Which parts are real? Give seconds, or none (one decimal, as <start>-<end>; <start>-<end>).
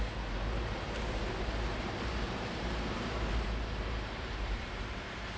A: 0.0-1.7; 4.9-5.4